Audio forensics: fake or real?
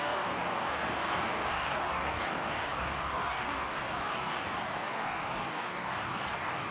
fake